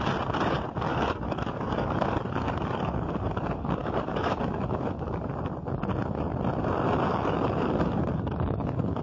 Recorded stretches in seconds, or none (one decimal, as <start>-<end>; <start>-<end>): 0.0-0.9; 5.3-7.1